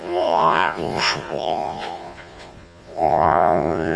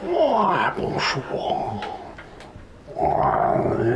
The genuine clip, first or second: second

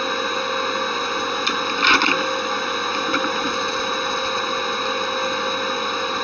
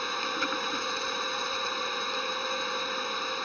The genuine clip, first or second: first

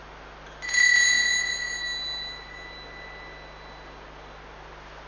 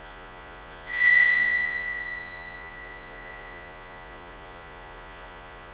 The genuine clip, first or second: first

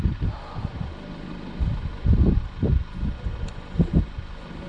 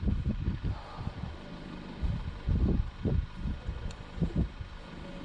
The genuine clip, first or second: first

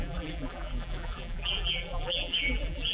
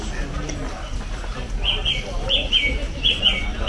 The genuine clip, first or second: second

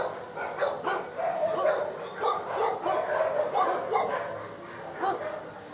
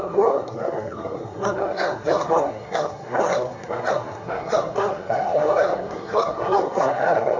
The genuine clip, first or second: first